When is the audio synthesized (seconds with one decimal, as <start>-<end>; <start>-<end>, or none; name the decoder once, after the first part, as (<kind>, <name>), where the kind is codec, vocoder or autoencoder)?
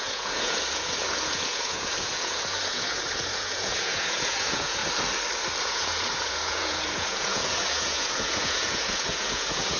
0.0-4.8 (vocoder, Vocos); 5.6-9.8